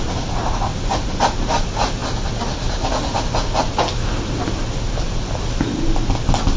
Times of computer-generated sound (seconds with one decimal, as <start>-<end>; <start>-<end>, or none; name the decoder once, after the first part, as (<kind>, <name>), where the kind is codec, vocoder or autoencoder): none

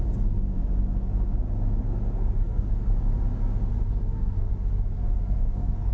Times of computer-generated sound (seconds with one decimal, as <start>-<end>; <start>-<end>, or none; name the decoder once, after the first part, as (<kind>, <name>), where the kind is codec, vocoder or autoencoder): 1.8-2.9 (codec, SNAC); 3.9-4.5; 5.2-5.9